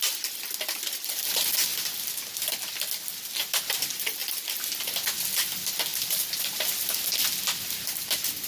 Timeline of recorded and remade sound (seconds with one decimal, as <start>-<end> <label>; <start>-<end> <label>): 0.0-1.7 recorded; 1.7-2.5 remade; 2.5-5.9 recorded; 5.9-7.3 remade; 7.3-8.5 recorded